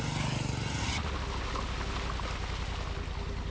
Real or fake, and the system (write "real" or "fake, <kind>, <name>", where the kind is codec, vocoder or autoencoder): real